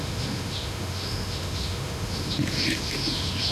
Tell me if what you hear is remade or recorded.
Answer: remade